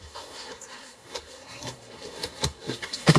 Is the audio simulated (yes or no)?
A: yes